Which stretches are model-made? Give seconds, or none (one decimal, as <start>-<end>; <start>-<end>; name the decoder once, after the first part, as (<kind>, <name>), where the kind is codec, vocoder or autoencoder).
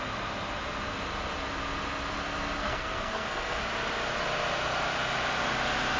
2.6-3.6 (codec, SNAC)